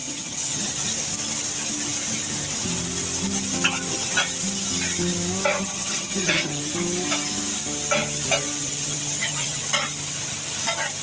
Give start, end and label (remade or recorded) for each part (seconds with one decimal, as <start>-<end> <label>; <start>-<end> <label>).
0.0-0.7 remade; 0.7-5.6 recorded; 5.6-6.6 remade; 6.6-8.6 recorded; 8.6-9.6 remade; 9.6-11.0 recorded